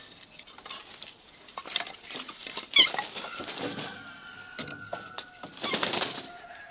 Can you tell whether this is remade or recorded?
recorded